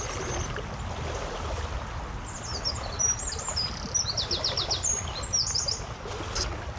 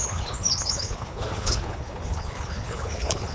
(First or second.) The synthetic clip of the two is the second